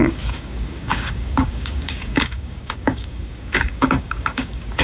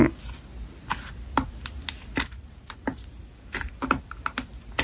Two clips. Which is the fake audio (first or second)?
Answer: first